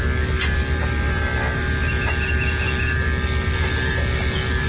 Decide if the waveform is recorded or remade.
recorded